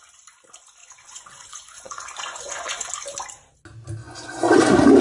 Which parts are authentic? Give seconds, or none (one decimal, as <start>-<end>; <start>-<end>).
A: 0.0-0.8; 2.9-4.0; 4.6-5.0